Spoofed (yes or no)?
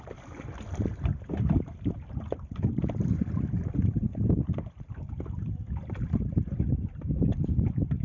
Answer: yes